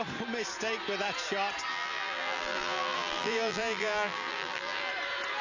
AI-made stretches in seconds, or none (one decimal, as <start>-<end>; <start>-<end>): 1.7-4.9